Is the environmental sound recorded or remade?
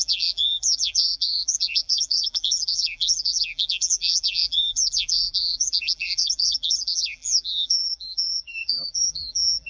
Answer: remade